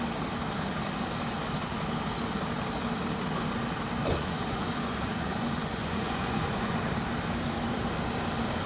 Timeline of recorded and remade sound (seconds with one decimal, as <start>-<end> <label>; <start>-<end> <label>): 0.0-4.1 recorded; 4.1-6.8 remade; 6.8-8.7 recorded